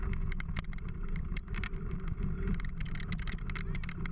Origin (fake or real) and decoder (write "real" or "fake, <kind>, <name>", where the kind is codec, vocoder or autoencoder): real